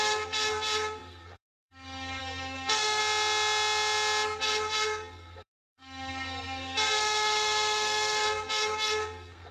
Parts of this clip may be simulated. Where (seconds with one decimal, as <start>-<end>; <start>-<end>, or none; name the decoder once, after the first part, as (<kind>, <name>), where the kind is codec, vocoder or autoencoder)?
0.0-3.0 (codec, SNAC); 4.4-9.5